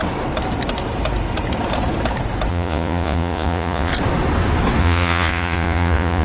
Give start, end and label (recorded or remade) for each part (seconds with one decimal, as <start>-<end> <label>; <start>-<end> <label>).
0.0-2.5 recorded; 2.5-3.9 remade; 3.9-4.8 recorded; 4.8-6.2 remade